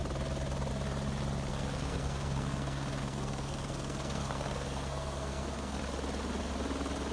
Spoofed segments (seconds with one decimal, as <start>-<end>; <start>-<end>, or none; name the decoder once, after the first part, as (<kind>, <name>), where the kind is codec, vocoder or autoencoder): 1.5-5.8 (codec, SNAC)